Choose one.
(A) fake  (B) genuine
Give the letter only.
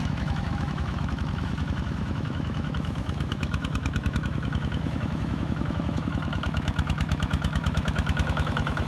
A